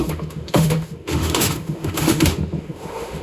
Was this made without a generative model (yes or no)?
no